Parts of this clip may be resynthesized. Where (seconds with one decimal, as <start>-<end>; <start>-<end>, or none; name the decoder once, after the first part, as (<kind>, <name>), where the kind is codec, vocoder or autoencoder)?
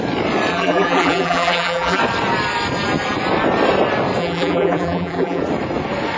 0.5-2.0 (vocoder, BigVGAN v2); 4.2-5.4